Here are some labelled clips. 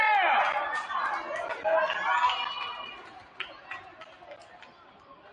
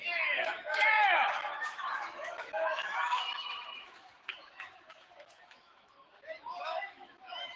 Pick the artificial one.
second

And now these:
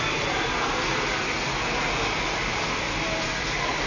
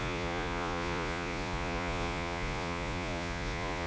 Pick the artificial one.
second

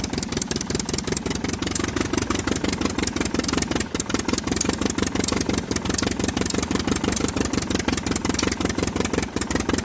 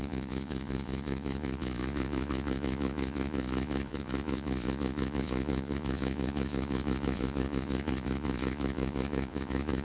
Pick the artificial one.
second